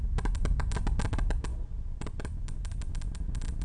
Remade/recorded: recorded